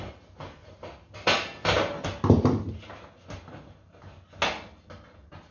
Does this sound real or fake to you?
real